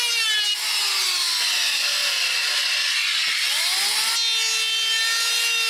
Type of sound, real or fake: real